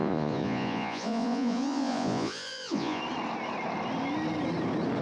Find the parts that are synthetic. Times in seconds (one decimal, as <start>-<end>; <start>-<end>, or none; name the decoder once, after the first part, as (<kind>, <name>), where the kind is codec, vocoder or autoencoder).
0.0-3.0 (vocoder, Vocos)